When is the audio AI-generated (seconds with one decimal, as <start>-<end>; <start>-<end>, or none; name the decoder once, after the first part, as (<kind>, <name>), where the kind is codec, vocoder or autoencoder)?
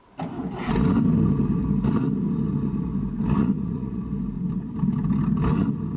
3.4-4.0 (vocoder, Vocos)